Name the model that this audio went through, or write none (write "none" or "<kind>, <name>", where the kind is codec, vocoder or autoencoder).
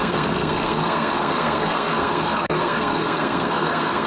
codec, SNAC